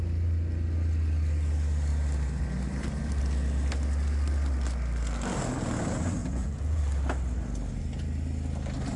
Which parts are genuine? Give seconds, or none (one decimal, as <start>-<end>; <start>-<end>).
0.0-6.2; 6.8-9.0